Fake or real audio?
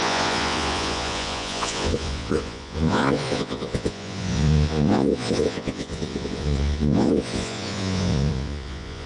fake